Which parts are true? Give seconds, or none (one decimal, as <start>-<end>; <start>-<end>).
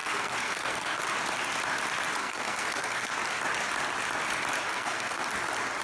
1.0-2.2; 3.1-4.7; 5.2-5.8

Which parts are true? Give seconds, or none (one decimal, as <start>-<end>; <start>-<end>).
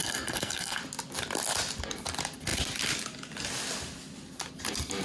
0.8-5.0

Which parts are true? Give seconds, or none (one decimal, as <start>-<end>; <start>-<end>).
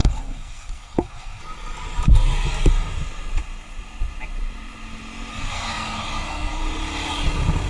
1.4-5.3; 6.6-7.7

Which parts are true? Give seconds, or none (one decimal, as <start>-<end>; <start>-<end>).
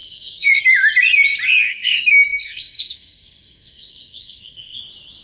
0.6-1.7; 4.8-5.2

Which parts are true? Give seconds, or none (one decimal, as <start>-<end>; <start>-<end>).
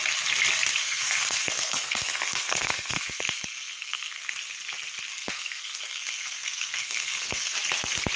0.0-0.8; 4.3-5.1; 7.5-8.2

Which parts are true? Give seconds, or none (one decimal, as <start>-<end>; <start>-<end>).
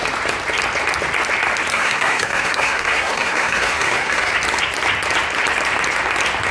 0.0-1.7; 4.3-6.5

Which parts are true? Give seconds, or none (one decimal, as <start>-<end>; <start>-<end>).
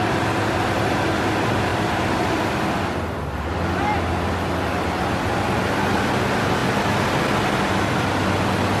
0.0-8.8